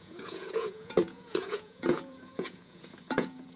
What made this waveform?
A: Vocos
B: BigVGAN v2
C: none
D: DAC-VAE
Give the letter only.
A